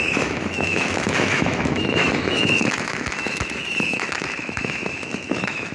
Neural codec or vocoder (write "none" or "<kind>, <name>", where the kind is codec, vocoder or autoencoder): autoencoder, DAC-VAE